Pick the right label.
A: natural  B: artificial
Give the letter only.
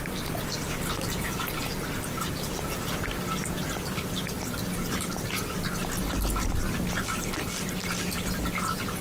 A